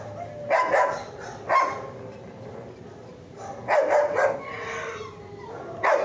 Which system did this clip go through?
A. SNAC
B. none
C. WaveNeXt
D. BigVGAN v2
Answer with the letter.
B